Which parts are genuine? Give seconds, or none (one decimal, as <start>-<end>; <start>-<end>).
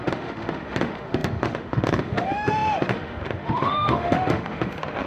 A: none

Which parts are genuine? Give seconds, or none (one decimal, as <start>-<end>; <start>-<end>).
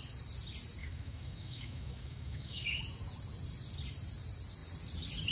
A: 0.0-0.8; 2.8-5.3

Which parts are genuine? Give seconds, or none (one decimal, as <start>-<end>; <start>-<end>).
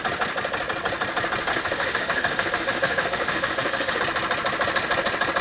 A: 0.0-1.5; 4.0-5.4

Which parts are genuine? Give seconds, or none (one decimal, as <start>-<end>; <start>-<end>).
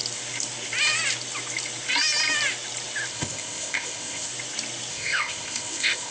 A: 0.0-3.1; 4.3-4.9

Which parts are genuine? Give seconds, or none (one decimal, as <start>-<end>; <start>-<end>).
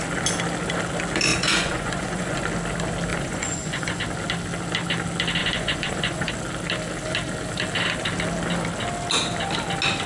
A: 0.0-1.3; 2.4-3.1; 4.0-5.4; 6.3-10.1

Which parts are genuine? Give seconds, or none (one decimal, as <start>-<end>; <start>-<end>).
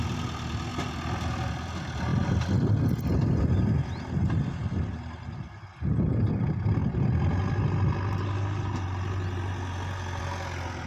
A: 0.0-10.9